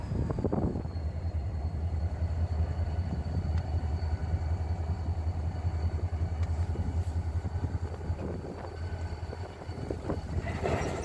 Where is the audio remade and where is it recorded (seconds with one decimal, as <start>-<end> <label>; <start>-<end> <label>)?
0.0-4.2 remade; 4.2-8.7 recorded; 8.7-11.0 remade